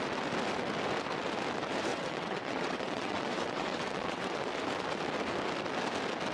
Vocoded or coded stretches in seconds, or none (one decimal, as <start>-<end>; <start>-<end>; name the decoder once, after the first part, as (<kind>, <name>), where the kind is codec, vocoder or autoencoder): 1.9-4.4 (vocoder, WaveNeXt)